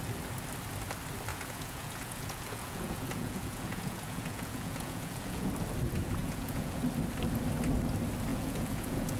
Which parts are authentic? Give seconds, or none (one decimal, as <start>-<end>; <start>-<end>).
0.0-1.3; 5.5-6.2; 6.8-8.3